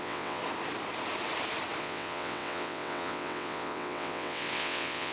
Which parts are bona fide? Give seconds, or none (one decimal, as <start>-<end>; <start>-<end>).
0.4-1.8